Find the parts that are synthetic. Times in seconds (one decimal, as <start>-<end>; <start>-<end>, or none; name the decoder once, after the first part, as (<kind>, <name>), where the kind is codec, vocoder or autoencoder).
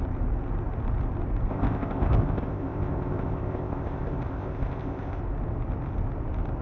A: 1.5-5.2 (codec, ZipCodec)